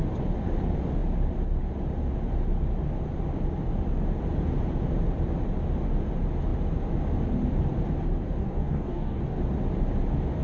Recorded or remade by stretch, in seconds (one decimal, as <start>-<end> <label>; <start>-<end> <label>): 0.0-8.4 recorded; 8.4-9.2 remade; 9.2-10.4 recorded